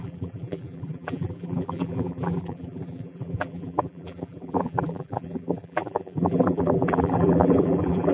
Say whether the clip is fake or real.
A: fake